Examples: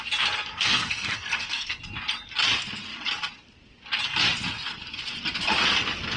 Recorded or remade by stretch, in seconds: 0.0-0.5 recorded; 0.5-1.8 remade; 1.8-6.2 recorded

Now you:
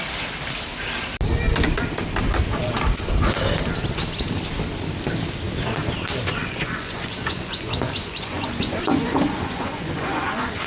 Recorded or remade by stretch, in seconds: 0.0-6.4 recorded; 6.4-10.7 remade

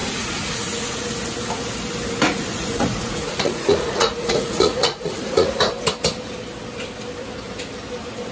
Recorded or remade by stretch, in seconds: 0.0-1.0 remade; 1.0-2.5 recorded; 2.5-5.5 remade; 5.5-8.3 recorded

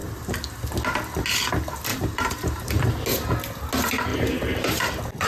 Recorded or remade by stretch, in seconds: 0.0-1.9 recorded; 1.9-2.9 remade; 2.9-4.1 recorded; 4.1-4.7 remade; 4.7-5.3 recorded

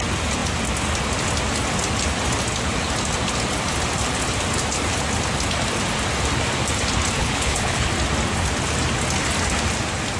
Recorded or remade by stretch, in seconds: 0.0-7.2 recorded; 7.2-7.9 remade; 7.9-10.2 recorded

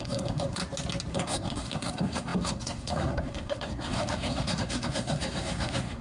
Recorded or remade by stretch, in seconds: 0.0-0.6 remade; 0.6-1.1 recorded; 1.1-6.0 remade

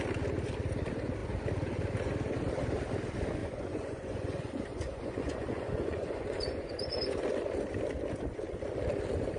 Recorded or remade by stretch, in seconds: 0.0-3.4 recorded; 3.4-6.7 remade; 6.7-9.4 recorded